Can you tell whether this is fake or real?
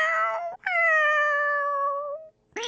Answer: real